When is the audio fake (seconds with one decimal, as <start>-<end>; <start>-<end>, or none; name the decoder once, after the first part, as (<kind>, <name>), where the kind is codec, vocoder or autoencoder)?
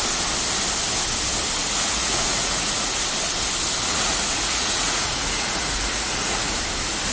1.6-3.0 (vocoder, Vocos); 3.9-6.6